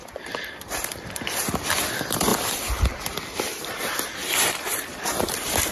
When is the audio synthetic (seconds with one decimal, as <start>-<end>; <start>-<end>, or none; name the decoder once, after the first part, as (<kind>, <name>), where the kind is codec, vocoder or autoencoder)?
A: 0.0-5.7 (vocoder, BigVGAN v2)